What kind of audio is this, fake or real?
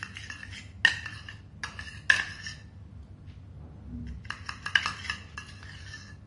real